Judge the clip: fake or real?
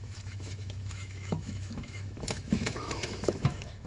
fake